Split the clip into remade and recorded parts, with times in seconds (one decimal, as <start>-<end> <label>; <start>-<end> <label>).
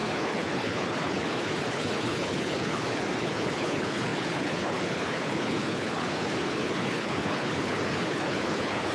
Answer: 0.0-8.9 remade